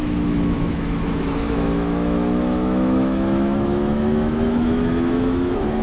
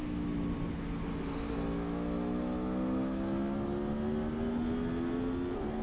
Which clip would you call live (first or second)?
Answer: second